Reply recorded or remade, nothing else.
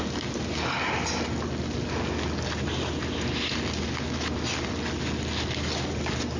recorded